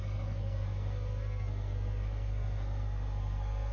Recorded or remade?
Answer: remade